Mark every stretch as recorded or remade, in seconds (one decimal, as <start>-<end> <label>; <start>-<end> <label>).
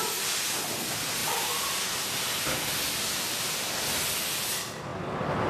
0.0-1.2 recorded; 1.2-4.5 remade; 4.5-5.5 recorded